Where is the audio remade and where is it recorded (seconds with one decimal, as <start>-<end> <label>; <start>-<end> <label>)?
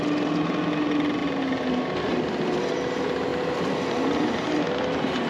0.0-3.3 recorded; 3.3-4.2 remade; 4.2-5.3 recorded